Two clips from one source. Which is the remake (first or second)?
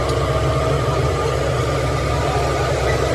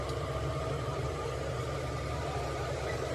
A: second